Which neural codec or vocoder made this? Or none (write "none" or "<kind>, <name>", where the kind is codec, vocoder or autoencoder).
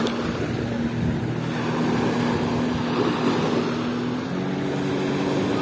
none